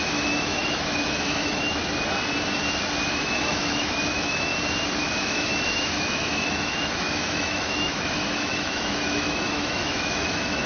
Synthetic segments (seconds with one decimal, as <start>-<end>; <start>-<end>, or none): 0.0-1.8; 3.1-4.5; 5.0-10.7